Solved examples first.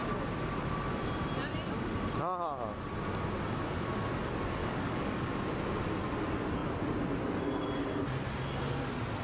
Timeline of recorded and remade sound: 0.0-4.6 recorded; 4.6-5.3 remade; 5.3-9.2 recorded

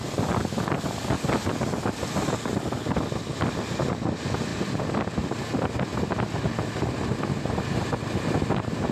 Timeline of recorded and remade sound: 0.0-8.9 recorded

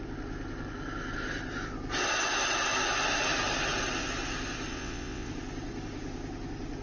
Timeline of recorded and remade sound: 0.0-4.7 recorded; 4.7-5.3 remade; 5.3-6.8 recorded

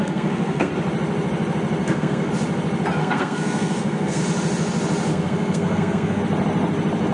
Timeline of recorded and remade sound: 0.0-0.7 remade; 0.7-1.8 recorded; 1.8-2.3 remade; 2.3-3.0 recorded; 3.0-4.2 remade; 4.2-5.1 recorded; 5.1-6.2 remade; 6.2-7.1 recorded

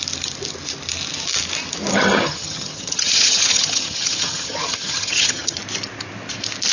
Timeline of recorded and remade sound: 0.0-1.9 recorded; 1.9-5.6 remade; 5.6-6.7 recorded

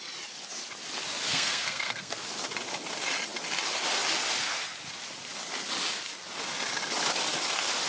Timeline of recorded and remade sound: 0.0-1.3 recorded; 1.3-2.2 remade; 2.2-7.9 recorded